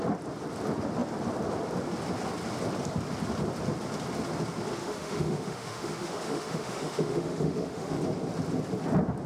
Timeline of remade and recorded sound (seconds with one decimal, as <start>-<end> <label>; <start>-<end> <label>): 0.0-4.8 recorded; 4.8-7.9 remade; 7.9-9.3 recorded